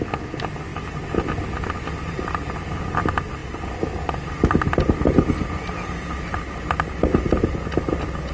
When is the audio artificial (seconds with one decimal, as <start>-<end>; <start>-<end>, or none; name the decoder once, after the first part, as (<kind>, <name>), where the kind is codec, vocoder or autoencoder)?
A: 0.7-1.6 (vocoder, BigVGAN v2)